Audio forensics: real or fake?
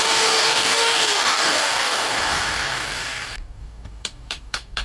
fake